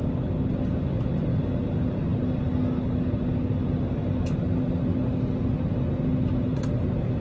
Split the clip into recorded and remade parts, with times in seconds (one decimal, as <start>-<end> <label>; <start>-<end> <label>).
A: 0.0-7.2 recorded